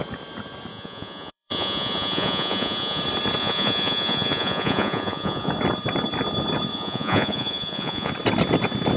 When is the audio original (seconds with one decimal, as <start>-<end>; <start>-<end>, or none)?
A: 0.0-0.7; 3.0-3.4; 5.5-6.7; 8.1-9.0